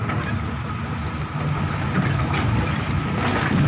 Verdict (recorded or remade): recorded